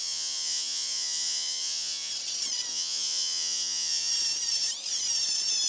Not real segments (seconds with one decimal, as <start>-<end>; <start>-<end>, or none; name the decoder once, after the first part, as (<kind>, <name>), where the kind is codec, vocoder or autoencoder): 0.0-2.1 (vocoder, Vocos); 2.7-4.1